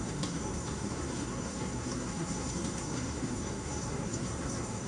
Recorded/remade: remade